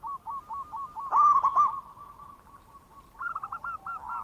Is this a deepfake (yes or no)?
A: no